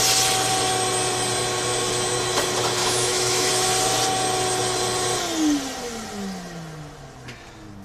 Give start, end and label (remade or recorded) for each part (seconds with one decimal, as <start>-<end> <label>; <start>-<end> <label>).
0.0-2.8 recorded; 2.8-3.5 remade; 3.5-7.8 recorded